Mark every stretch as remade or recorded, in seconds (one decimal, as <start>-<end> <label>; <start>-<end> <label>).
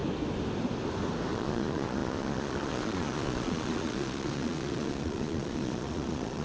0.0-1.3 recorded; 1.3-6.4 remade